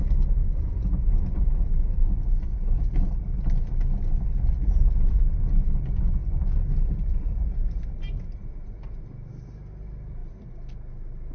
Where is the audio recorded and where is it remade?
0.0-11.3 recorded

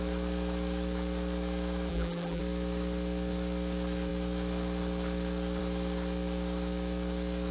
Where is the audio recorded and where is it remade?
0.0-1.9 recorded; 1.9-2.4 remade; 2.4-7.5 recorded

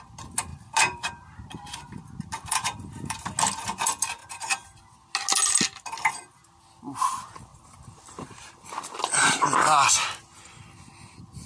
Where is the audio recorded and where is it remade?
0.0-0.5 recorded; 0.5-3.2 remade; 3.2-4.2 recorded; 4.2-4.8 remade; 4.8-7.5 recorded; 7.5-8.5 remade; 8.5-11.5 recorded